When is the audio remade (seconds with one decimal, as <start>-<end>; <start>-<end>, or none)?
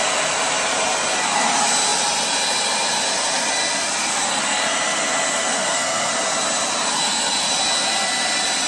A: 5.5-6.1